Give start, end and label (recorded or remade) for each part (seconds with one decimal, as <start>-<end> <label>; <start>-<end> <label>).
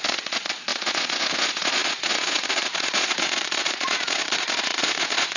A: 0.0-5.4 remade